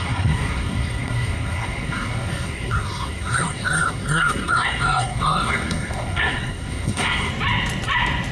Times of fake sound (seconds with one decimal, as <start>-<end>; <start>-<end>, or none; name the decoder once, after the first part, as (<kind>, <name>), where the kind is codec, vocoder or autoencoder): 0.0-7.3 (codec, SNAC)